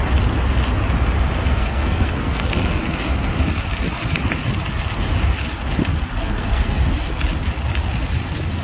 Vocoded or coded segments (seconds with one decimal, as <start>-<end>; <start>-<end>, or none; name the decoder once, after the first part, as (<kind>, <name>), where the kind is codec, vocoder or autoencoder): 1.4-2.8 (codec, SNAC); 6.2-6.8